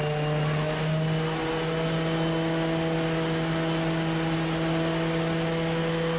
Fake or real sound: real